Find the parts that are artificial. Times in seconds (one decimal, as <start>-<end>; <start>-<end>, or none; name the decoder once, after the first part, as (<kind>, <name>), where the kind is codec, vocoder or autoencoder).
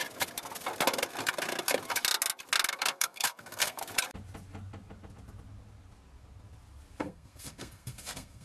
2.7-3.8 (codec, SNAC); 7.0-8.4